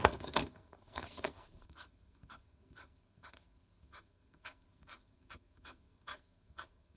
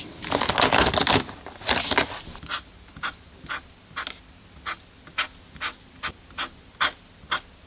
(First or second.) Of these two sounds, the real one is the second